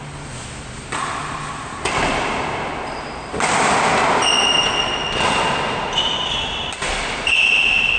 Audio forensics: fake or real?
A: real